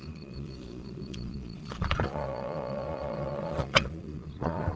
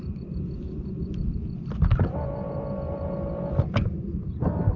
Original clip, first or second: second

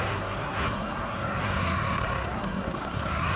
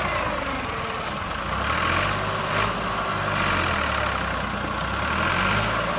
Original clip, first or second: second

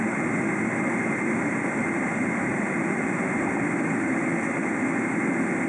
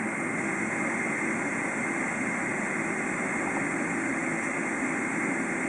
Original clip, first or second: second